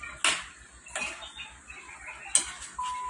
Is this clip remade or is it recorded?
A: recorded